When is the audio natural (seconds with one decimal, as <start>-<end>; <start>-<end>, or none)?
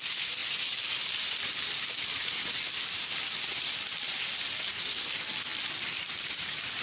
0.0-0.4; 4.5-5.5; 6.0-6.8